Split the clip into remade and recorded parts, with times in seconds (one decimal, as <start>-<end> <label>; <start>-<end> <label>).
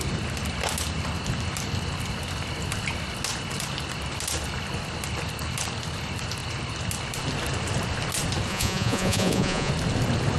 0.0-8.5 recorded; 8.5-9.7 remade; 9.7-10.4 recorded